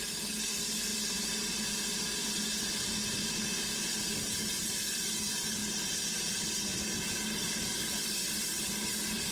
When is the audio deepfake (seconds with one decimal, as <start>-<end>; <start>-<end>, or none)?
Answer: none